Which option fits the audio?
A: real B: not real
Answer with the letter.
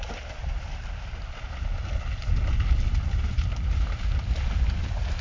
A